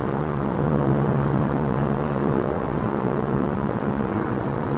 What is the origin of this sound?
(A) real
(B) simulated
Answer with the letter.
B